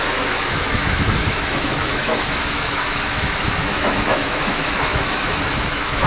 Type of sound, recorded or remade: remade